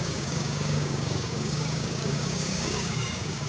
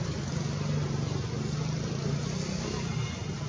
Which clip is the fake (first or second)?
first